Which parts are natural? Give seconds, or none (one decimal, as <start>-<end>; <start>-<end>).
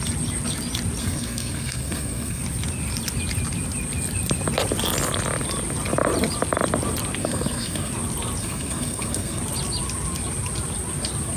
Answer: 0.0-1.0; 2.4-7.2; 7.9-8.4; 9.4-11.4